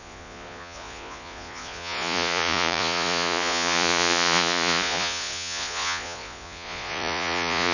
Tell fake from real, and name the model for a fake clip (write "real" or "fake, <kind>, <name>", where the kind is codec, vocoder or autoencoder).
fake, vocoder, Vocos